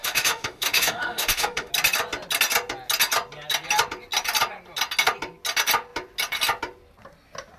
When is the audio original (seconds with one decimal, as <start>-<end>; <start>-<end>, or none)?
1.7-7.6